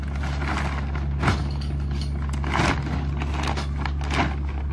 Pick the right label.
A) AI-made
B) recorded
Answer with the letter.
B